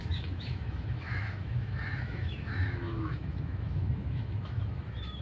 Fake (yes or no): yes